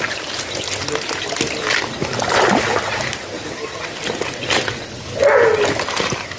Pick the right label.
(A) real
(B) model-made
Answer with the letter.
A